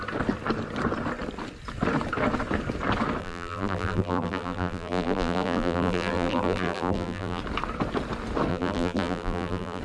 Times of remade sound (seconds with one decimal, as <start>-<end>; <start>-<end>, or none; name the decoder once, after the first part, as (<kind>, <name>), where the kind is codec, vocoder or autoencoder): 3.2-7.4 (vocoder, BigVGAN v2); 8.5-9.8